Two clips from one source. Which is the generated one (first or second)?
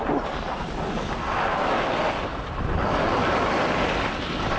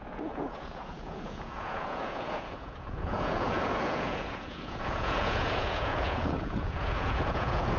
second